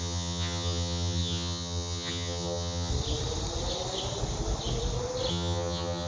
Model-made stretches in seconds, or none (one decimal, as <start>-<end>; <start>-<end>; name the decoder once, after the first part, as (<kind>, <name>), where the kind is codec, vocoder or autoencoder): 0.0-2.9 (vocoder, HiFi-GAN); 5.3-6.1